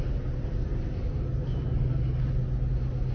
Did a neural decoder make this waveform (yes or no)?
no